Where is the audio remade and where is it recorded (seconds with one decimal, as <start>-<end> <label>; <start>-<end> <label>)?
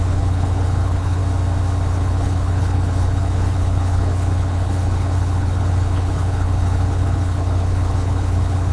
0.0-1.2 remade; 1.2-1.9 recorded; 1.9-8.7 remade